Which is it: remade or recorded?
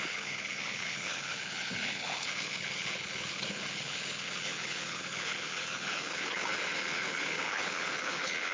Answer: remade